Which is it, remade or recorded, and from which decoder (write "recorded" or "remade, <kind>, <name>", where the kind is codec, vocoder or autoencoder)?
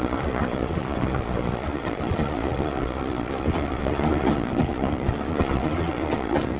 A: remade, vocoder, Vocos